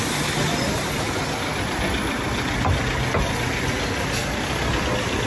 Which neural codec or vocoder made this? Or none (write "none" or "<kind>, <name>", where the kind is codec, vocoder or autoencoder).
none